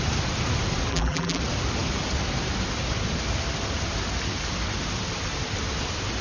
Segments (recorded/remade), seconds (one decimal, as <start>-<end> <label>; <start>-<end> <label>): 0.0-0.9 recorded; 0.9-1.4 remade; 1.4-6.2 recorded